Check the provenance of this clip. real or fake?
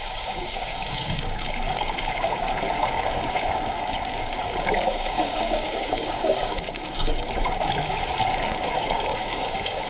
fake